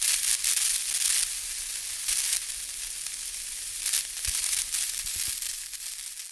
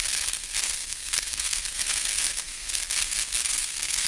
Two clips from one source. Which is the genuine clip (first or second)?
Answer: first